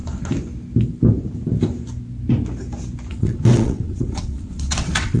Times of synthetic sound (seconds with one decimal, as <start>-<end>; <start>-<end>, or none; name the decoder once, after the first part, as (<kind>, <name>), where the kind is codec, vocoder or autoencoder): 3.1-5.2 (vocoder, WaveNeXt)